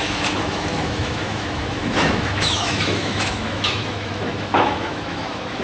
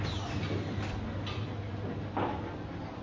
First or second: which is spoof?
first